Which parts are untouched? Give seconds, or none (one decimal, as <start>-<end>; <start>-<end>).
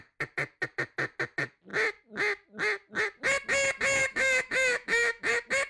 0.0-4.0; 5.3-5.7